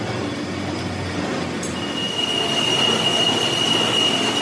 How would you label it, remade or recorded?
recorded